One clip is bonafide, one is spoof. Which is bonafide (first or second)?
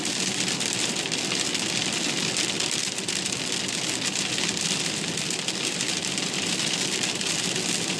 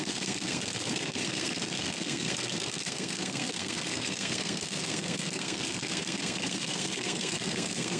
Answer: first